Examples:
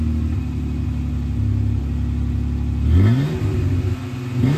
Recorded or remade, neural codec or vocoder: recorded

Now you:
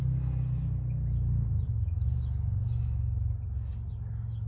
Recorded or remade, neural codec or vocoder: recorded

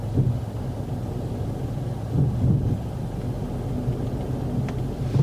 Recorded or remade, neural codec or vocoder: recorded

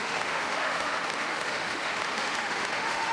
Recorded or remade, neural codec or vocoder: remade, autoencoder, DAC-VAE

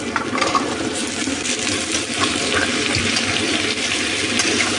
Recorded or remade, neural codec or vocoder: remade, vocoder, BigVGAN v2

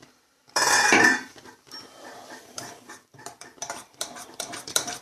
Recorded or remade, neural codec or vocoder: remade, vocoder, BigVGAN v2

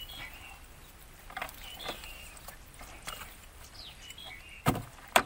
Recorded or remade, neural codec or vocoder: recorded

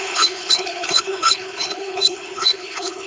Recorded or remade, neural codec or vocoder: remade, codec, HILCodec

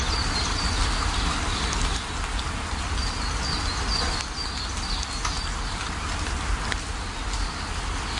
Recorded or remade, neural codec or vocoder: recorded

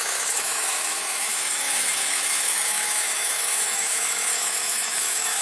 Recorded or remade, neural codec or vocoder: remade, autoencoder, DAC-VAE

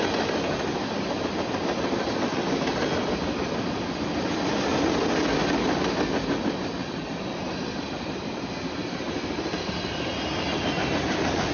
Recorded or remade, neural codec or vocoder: recorded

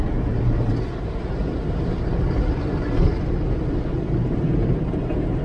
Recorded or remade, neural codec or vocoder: recorded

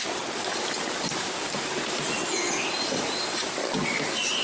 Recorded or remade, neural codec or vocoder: recorded